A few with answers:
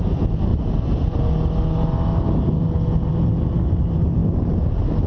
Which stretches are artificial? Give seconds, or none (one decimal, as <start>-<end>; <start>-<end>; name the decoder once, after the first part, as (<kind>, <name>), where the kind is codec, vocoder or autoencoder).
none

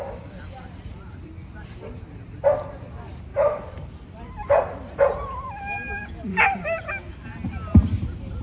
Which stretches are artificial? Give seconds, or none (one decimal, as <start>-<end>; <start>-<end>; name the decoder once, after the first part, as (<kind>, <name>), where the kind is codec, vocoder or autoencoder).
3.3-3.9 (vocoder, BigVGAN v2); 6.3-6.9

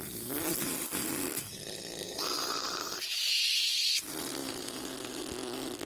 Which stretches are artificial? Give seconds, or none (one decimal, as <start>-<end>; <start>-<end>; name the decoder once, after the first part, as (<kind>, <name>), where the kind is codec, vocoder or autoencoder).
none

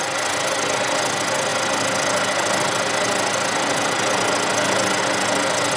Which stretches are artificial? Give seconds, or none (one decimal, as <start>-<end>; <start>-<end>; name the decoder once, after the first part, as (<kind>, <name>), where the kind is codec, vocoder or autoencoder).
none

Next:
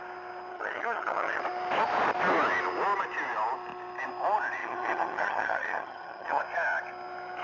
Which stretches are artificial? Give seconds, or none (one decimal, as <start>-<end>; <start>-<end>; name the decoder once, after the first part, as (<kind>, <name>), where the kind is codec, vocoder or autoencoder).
0.5-1.4 (vocoder, HiFi-GAN); 4.6-6.4